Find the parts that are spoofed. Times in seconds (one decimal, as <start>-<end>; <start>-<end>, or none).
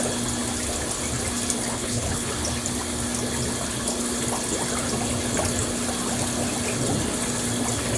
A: 1.7-2.3